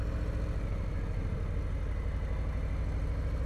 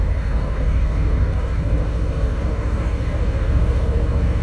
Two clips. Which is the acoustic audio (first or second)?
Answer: first